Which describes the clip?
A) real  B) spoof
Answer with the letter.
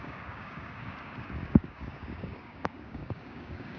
B